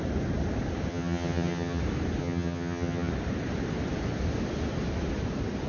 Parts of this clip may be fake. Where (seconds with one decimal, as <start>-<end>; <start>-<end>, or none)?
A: 0.9-1.8; 2.2-3.1